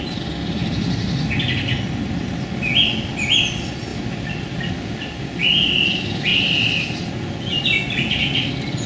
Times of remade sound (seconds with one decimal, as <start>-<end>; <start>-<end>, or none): none